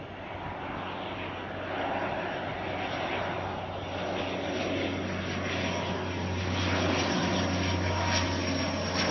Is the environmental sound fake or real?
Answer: real